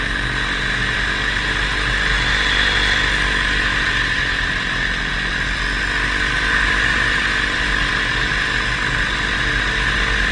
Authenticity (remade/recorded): recorded